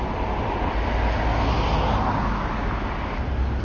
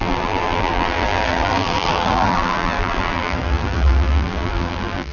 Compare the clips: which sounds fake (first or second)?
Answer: second